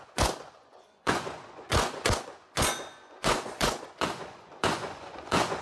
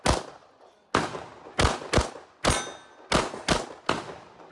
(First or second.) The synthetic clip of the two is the first